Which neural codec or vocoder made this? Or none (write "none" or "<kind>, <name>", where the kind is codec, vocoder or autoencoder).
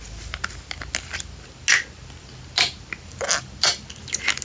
none